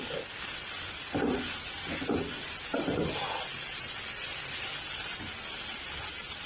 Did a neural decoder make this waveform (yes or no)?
no